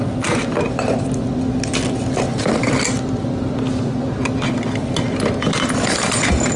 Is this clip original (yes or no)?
yes